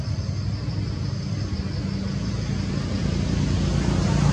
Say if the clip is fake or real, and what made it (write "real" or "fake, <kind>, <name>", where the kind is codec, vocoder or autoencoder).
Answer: real